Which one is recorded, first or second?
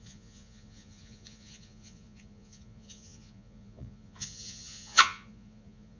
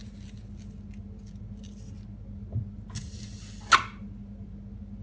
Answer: second